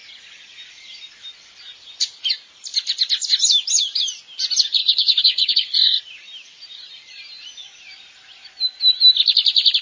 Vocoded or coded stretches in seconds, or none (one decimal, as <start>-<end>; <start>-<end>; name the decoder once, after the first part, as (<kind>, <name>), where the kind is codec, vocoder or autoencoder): 4.8-6.0 (codec, HILCodec)